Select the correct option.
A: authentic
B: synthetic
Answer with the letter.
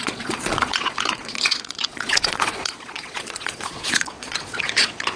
B